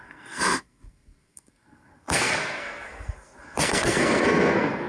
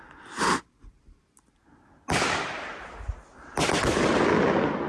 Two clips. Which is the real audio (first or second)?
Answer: second